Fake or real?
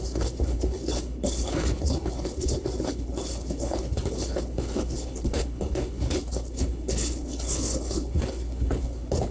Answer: fake